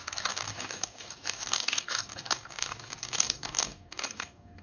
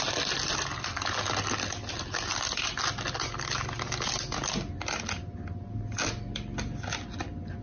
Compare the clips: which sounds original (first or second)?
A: second